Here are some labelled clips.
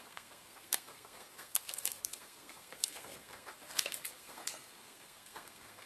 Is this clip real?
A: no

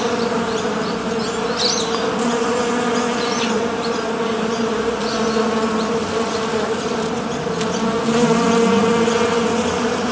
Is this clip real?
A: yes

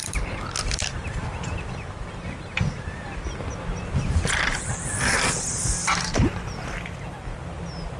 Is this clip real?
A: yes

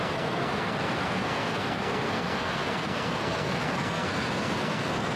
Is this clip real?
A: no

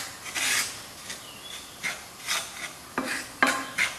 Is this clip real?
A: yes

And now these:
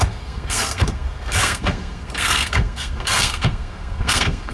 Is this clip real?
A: no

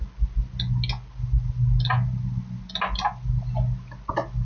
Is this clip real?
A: yes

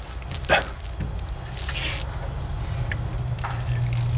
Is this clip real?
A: yes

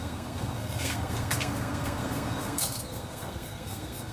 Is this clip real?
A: no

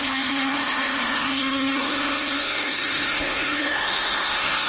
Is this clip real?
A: no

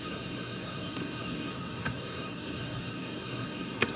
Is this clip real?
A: no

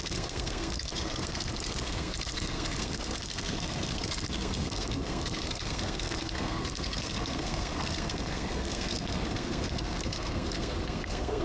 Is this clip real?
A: no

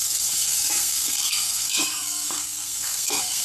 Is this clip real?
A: no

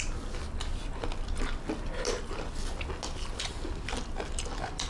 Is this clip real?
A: yes